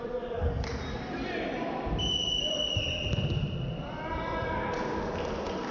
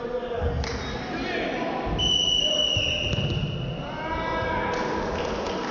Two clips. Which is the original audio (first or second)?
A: second